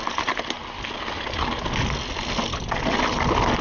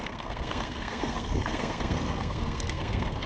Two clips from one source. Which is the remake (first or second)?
second